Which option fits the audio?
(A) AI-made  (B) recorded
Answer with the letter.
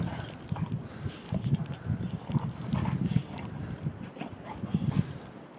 B